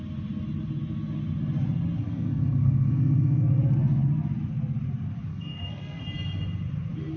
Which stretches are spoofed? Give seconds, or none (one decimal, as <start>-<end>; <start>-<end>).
2.0-3.6; 5.3-6.0